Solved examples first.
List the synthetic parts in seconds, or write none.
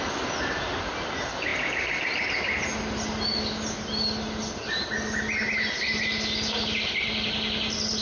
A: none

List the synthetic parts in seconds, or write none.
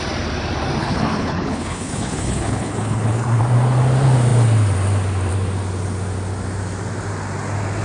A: 0.8-3.4 (codec, HILCodec)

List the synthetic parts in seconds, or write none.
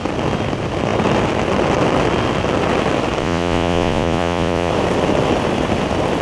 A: 3.2-4.7 (vocoder, Vocos)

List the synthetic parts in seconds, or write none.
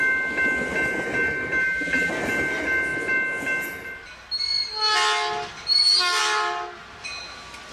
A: 1.6-2.1 (vocoder, BigVGAN v2)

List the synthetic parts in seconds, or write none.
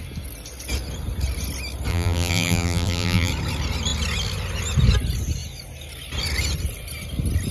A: 1.9-3.3 (vocoder, BigVGAN v2)